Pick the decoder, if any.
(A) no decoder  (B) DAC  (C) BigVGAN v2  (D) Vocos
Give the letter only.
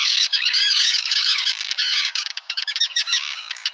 B